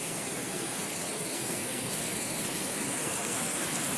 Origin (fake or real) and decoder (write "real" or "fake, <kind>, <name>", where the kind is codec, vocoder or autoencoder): fake, codec, SNAC